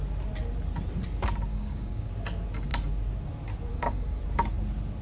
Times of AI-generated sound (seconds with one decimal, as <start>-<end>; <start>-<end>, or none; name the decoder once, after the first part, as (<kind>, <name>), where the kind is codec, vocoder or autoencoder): 1.5-2.1 (codec, DAC); 3.7-4.2